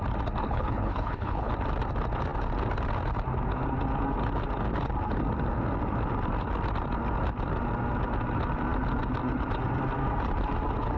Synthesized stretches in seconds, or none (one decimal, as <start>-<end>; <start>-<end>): 0.4-1.5